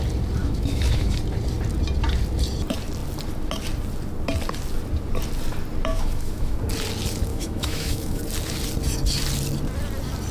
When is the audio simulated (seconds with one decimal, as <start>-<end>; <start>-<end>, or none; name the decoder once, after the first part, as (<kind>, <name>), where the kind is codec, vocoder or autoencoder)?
0.4-1.2 (autoencoder, DAC-VAE); 5.9-6.6; 7.3-8.2